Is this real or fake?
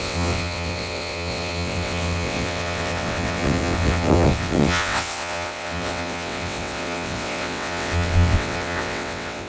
fake